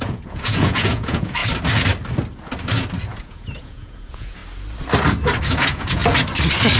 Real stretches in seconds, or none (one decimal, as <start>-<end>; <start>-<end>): 1.4-3.0; 4.4-5.5; 6.0-6.8